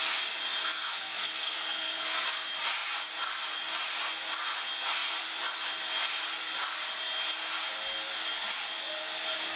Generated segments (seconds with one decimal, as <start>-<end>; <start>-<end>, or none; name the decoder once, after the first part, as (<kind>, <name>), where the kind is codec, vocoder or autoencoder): 0.6-2.3 (codec, SNAC)